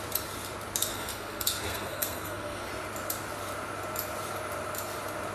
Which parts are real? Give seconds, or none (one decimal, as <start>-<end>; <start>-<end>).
0.0-0.9; 2.7-5.3